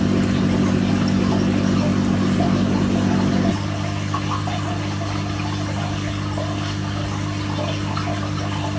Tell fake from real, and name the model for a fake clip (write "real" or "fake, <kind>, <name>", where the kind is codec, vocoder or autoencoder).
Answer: real